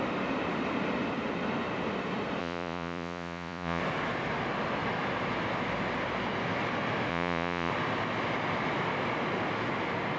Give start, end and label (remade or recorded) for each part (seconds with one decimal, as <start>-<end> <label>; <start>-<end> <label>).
0.0-2.4 recorded; 2.4-3.8 remade; 3.8-7.1 recorded; 7.1-7.7 remade; 7.7-10.2 recorded